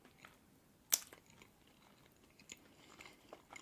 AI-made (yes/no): no